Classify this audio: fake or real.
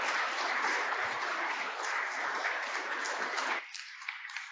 fake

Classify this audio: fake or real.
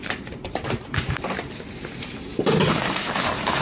fake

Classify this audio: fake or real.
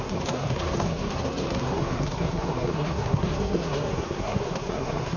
fake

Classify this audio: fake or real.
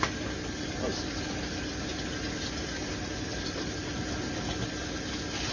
real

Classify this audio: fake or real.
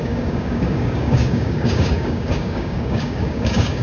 fake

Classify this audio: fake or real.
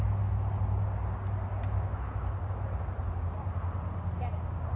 real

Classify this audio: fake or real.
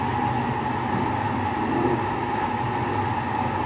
real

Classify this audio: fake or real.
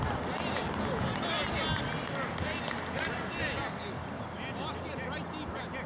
real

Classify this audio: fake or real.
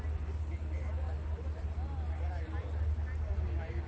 real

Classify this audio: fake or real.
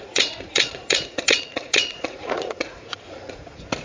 fake